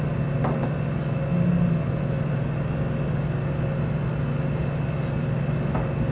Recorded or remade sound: recorded